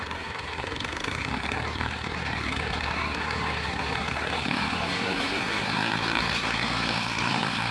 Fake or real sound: fake